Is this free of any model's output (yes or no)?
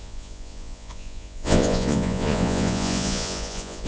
no